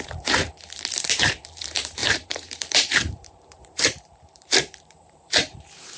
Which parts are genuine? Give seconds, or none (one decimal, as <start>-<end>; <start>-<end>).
0.4-1.6